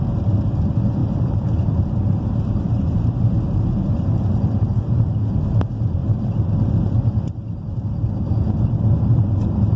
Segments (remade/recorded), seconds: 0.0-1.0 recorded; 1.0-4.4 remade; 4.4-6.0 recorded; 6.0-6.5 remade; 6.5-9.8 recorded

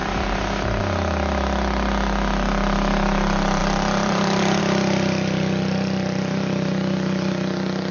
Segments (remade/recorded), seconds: 0.0-0.8 remade; 0.8-3.6 recorded; 3.6-4.6 remade; 4.6-7.9 recorded